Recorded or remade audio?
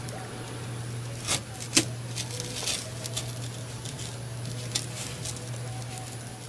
recorded